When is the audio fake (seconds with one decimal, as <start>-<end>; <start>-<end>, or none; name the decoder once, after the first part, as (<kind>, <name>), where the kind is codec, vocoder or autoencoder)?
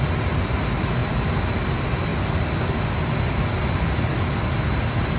none